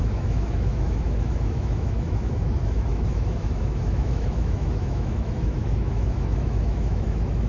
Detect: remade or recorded remade